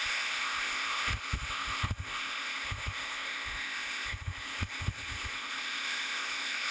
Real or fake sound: fake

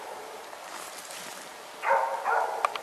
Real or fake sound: real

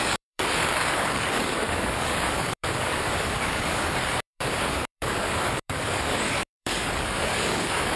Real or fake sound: fake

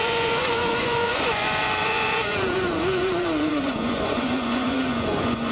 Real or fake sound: fake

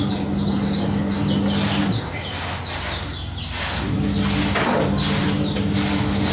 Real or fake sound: real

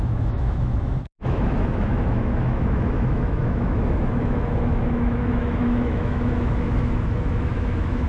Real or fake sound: fake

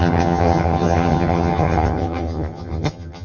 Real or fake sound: fake